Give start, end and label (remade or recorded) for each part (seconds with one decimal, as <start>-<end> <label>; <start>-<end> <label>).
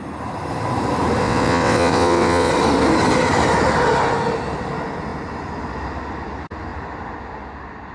0.0-1.2 recorded; 1.2-2.5 remade; 2.5-7.9 recorded